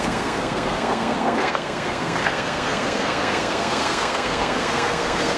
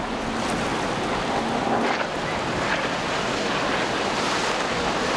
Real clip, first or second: second